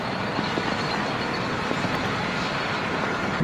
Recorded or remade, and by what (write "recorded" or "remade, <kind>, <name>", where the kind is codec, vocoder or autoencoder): recorded